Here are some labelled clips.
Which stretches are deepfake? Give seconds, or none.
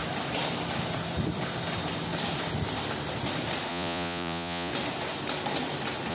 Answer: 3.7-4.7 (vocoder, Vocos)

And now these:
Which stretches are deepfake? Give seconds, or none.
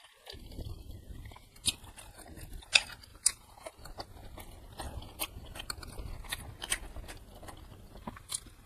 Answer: 3.1-3.7 (vocoder, Vocos)